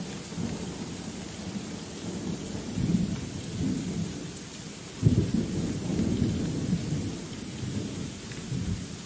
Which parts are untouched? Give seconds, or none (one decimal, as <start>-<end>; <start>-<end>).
0.0-9.1